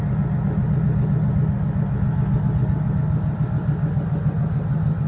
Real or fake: real